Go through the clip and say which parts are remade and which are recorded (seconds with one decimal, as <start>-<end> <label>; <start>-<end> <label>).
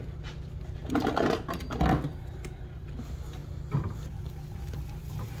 0.0-5.4 recorded